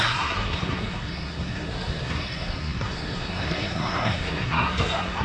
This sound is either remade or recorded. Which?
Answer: remade